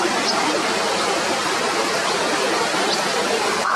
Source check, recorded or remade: recorded